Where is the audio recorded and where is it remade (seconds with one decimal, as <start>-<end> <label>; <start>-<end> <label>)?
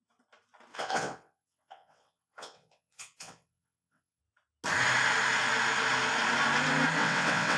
0.0-0.7 recorded; 0.7-4.2 remade; 4.2-7.0 recorded; 7.0-7.6 remade